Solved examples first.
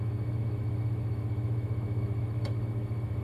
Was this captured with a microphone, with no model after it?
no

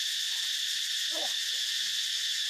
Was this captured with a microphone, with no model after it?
yes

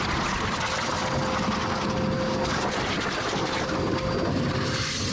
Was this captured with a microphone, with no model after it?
yes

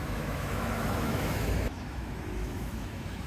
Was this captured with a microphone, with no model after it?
no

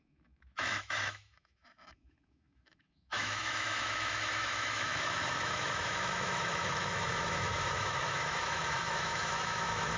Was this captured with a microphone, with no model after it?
no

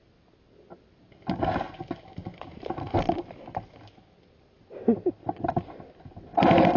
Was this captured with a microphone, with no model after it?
yes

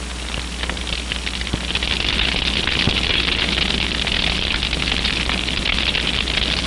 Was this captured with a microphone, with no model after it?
yes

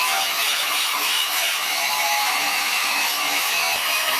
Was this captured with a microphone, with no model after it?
no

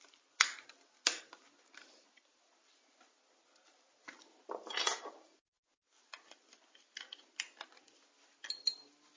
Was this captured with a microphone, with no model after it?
yes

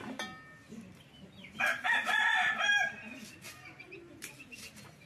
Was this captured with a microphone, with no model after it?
yes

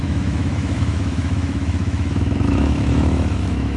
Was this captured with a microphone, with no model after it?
no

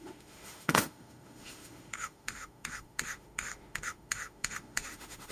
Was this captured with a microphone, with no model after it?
no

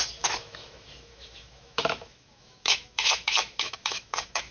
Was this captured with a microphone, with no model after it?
no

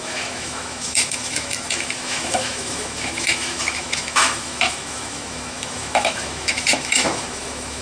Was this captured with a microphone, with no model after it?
no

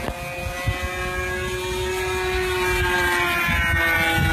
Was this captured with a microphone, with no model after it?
yes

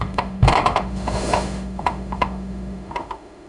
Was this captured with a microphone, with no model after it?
no